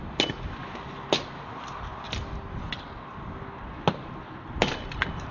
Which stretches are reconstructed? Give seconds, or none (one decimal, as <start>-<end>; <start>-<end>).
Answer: none